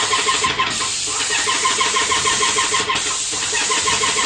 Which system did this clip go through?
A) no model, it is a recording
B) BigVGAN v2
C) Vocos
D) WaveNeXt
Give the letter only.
B